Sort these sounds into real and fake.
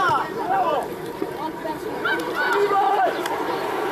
fake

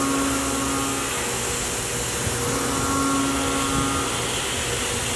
real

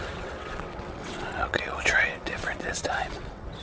fake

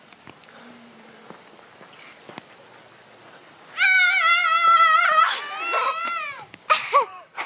real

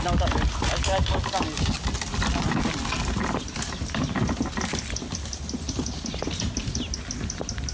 real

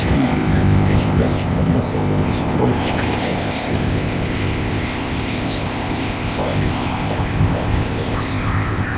fake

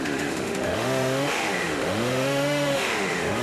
fake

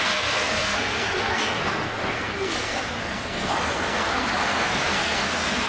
fake